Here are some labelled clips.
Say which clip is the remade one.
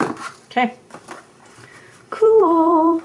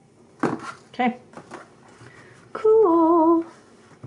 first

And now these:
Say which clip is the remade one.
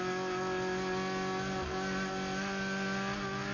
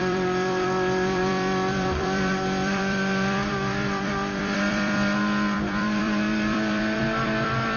second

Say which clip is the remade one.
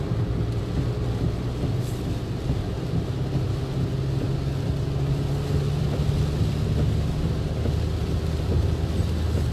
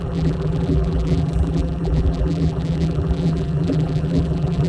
second